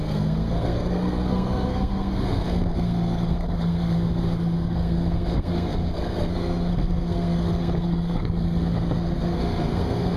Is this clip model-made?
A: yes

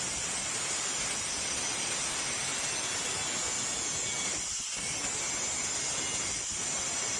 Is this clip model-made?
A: no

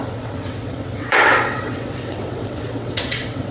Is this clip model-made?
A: yes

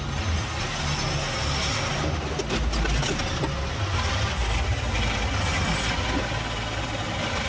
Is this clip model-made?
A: no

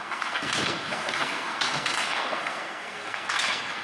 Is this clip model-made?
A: yes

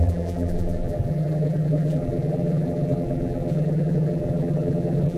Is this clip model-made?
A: yes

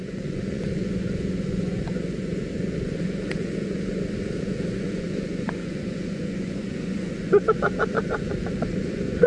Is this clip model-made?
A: yes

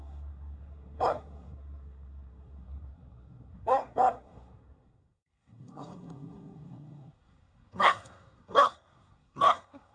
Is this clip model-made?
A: yes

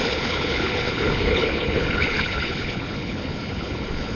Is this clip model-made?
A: yes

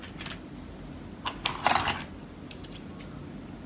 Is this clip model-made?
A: no